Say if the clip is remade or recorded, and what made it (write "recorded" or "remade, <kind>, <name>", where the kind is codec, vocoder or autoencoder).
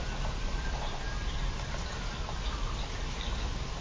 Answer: recorded